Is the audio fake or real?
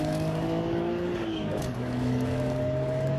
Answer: fake